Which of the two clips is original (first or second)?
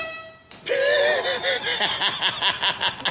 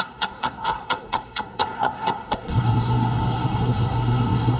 first